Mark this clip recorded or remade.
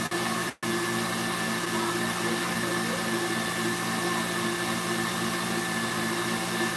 recorded